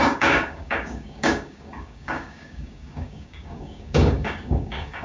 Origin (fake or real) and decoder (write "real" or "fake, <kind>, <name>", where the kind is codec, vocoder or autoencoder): fake, codec, DAC